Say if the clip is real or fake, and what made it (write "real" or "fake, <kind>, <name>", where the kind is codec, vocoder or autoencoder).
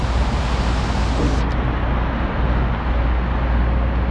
real